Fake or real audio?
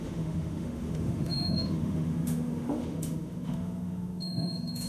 fake